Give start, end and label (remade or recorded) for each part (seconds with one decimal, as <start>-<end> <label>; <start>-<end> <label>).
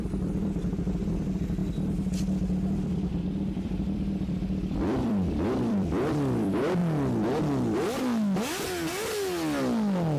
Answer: 0.0-6.8 remade; 6.8-10.2 recorded